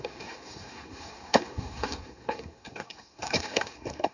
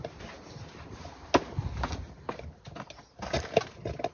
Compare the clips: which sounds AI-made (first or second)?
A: first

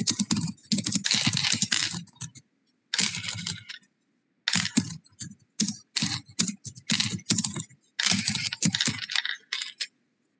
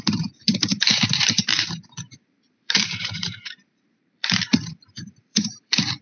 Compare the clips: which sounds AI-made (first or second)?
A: second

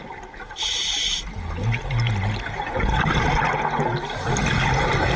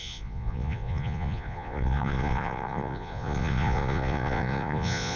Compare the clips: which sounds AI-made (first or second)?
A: second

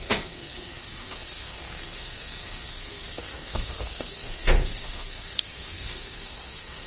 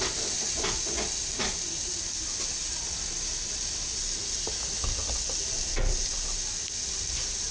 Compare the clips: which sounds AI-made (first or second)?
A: first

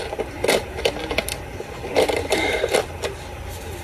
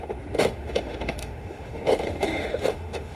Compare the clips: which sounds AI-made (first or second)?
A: second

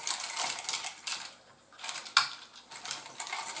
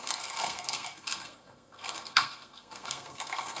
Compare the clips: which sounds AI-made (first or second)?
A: second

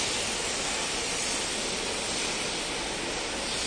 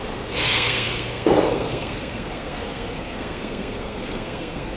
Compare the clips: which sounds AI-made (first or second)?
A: second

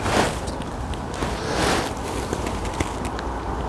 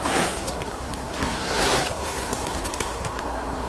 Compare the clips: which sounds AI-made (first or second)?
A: second